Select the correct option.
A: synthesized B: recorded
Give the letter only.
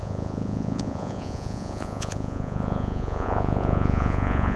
A